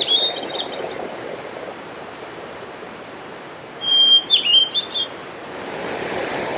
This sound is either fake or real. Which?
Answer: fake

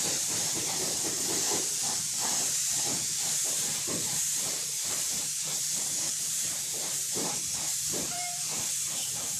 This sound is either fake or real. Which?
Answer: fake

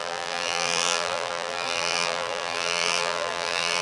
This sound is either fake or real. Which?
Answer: fake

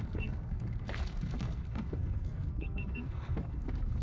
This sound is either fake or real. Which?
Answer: fake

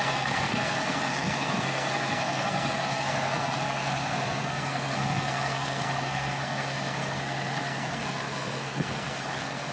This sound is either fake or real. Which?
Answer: fake